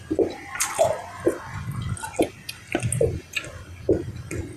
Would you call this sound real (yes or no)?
yes